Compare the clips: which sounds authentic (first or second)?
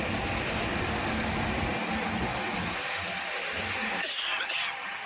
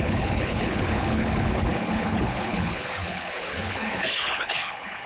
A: first